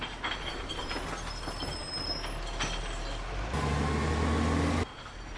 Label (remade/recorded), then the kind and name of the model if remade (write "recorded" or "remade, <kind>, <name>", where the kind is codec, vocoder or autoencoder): recorded